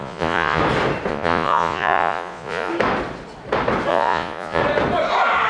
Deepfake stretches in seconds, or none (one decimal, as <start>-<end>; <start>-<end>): 0.0-0.6; 1.1-2.7; 3.9-4.6